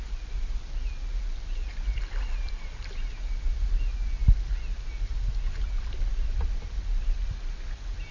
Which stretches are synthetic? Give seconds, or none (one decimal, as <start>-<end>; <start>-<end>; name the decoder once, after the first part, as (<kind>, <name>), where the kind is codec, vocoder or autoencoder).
none